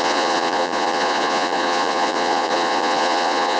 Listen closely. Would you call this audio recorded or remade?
remade